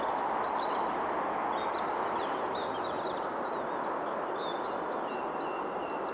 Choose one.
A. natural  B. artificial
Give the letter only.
A